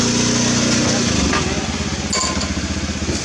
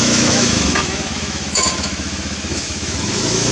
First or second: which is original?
first